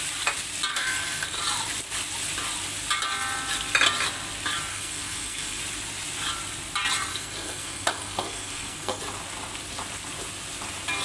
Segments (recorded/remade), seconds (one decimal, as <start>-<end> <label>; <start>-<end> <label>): 0.0-0.7 recorded; 0.7-1.4 remade; 1.4-4.7 recorded; 4.7-5.6 remade; 5.6-7.1 recorded; 7.1-9.0 remade; 9.0-11.0 recorded